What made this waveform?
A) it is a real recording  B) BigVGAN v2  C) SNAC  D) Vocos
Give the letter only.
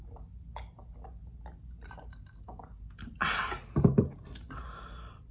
A